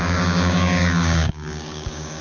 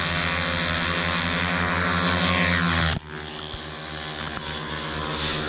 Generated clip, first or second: first